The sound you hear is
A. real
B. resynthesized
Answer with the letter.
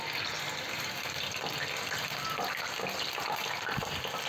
A